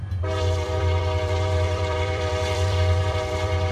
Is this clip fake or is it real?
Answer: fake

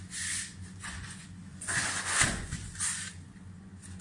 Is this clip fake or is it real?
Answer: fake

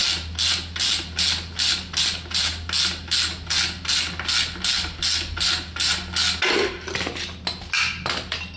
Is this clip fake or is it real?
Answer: real